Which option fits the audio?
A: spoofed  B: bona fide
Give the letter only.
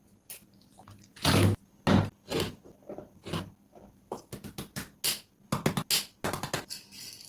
B